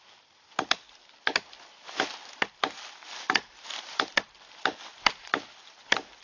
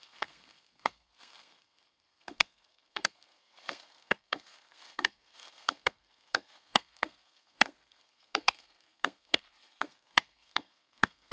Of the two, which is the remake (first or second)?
second